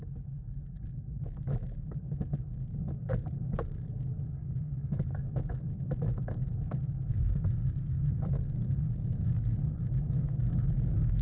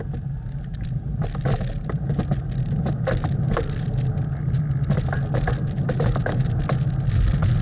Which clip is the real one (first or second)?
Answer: second